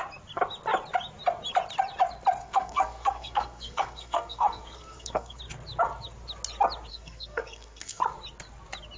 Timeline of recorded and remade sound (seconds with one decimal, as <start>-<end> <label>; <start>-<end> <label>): 0.0-2.4 recorded; 2.4-5.4 remade; 5.4-6.9 recorded; 6.9-8.0 remade; 8.0-9.0 recorded